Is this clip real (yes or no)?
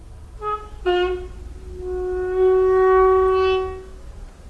yes